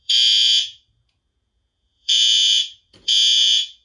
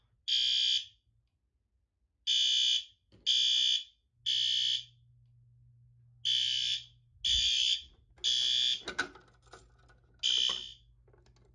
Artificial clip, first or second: first